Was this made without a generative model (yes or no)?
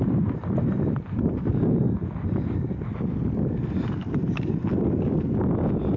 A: yes